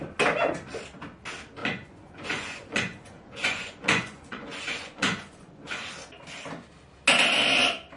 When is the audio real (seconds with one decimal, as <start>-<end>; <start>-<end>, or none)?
0.0-1.6; 5.9-8.0